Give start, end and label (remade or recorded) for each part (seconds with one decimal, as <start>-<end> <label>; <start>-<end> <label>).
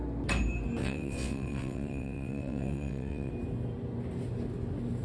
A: 0.0-0.8 recorded; 0.8-3.3 remade; 3.3-5.0 recorded